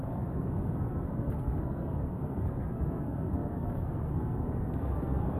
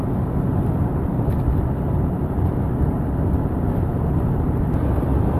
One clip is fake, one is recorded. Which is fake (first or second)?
first